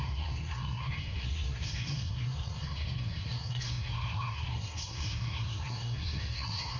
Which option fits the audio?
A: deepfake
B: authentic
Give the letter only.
A